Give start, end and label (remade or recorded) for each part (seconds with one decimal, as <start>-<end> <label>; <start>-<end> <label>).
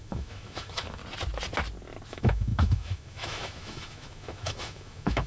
0.0-1.0 remade; 1.0-2.1 recorded; 2.1-5.3 remade